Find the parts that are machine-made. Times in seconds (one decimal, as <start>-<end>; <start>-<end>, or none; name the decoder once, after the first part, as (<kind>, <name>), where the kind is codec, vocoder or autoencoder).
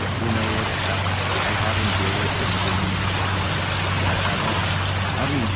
none